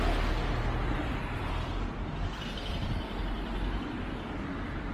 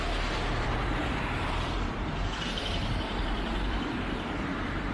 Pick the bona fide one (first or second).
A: first